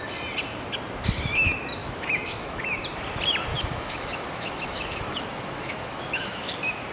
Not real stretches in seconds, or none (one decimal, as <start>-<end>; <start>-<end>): 1.8-2.8; 3.5-6.5